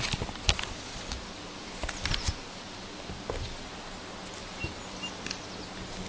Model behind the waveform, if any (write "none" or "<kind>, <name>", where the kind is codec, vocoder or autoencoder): none